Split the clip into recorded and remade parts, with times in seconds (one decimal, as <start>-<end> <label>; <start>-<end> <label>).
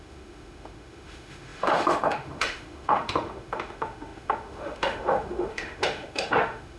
0.0-6.8 remade